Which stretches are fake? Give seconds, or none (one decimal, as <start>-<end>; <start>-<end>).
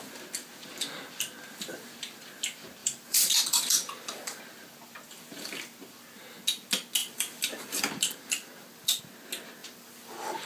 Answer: 2.8-4.4; 7.0-9.0; 9.6-10.5